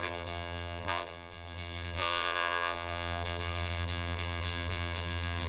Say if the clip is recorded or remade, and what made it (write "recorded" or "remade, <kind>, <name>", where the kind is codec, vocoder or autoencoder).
remade, vocoder, BigVGAN v2